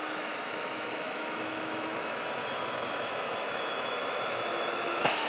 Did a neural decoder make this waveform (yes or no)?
yes